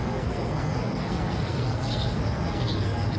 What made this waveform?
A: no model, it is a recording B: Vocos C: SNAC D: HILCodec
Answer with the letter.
C